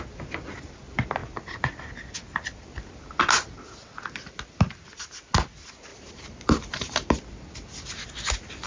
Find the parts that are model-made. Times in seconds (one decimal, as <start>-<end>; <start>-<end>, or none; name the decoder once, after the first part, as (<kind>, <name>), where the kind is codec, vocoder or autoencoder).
5.9-7.1 (vocoder, BigVGAN v2)